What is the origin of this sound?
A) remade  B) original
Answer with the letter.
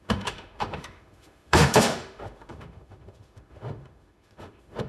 A